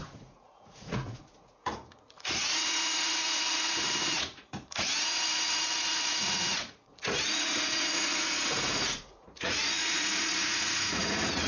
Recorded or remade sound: remade